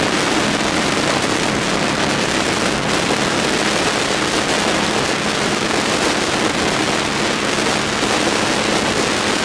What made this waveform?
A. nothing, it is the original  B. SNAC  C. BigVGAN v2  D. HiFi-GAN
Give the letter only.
A